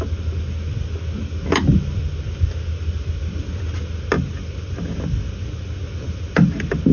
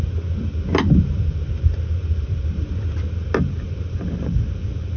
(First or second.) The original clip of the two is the first